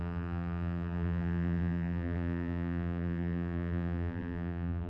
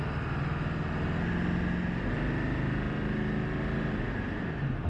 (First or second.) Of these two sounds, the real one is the second